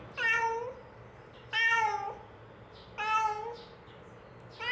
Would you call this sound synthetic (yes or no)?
no